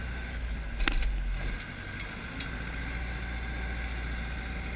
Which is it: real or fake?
real